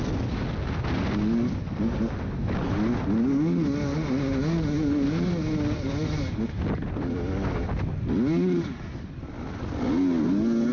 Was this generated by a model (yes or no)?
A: no